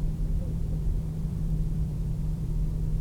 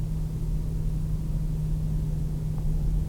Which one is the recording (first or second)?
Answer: second